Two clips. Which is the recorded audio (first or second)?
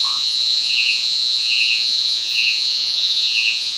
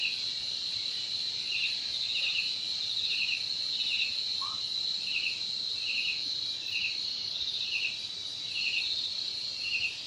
second